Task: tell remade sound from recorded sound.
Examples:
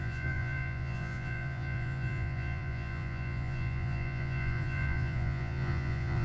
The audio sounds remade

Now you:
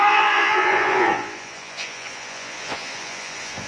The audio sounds remade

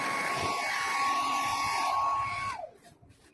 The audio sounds recorded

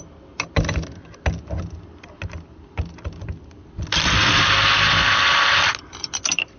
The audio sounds recorded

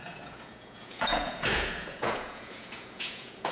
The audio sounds remade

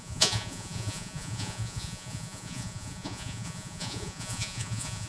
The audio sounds remade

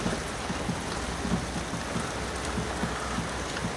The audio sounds recorded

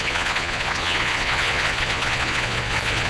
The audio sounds remade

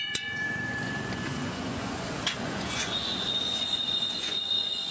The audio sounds remade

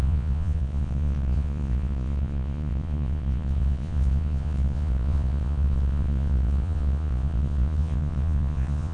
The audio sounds remade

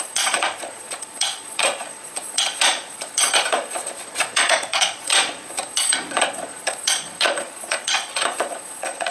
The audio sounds remade